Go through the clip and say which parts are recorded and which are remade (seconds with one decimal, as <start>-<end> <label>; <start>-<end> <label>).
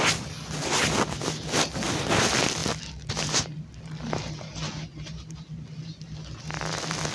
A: 0.0-7.1 recorded